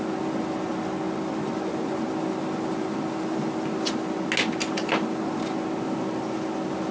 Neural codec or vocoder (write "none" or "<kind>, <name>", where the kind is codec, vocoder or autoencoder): none